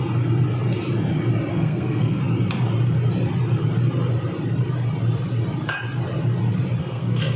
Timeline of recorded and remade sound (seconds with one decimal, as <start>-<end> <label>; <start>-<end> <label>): 0.0-1.5 recorded; 1.5-2.2 remade; 2.2-6.8 recorded; 6.8-7.4 remade